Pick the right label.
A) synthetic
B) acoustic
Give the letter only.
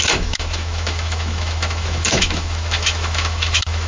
A